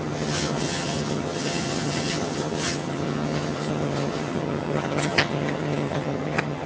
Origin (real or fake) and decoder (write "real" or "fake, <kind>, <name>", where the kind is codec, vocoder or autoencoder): fake, vocoder, HiFi-GAN